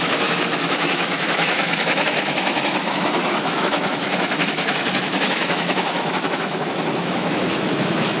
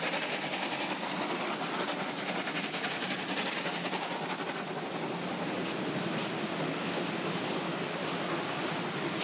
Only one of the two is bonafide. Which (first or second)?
second